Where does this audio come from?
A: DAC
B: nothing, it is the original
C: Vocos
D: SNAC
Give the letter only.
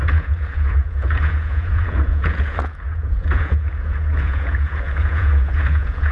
C